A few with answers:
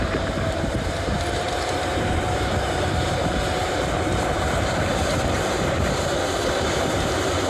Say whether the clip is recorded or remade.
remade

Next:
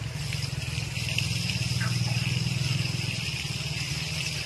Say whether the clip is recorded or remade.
recorded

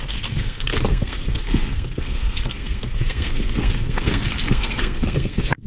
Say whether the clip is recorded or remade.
remade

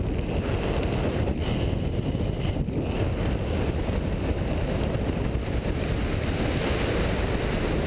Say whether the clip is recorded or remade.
recorded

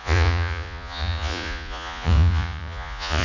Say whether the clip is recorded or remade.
remade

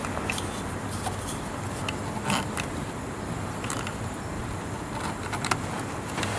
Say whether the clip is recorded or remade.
recorded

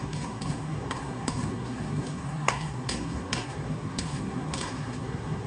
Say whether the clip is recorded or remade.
remade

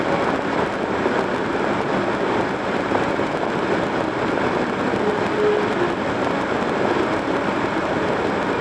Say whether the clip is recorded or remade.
recorded